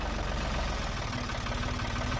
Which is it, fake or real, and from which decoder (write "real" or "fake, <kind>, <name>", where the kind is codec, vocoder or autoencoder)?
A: real